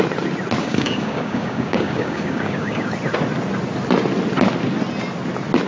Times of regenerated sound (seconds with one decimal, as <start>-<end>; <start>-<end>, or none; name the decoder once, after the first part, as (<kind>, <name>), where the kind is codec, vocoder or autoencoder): 0.6-2.9 (codec, DAC)